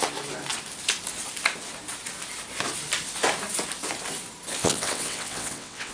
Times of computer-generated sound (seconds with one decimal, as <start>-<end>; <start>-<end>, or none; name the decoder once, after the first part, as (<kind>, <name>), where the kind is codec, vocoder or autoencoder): 4.6-5.9 (vocoder, WaveNeXt)